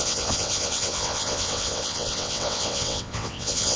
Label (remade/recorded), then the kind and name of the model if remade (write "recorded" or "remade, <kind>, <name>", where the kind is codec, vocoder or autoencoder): remade, vocoder, WaveNeXt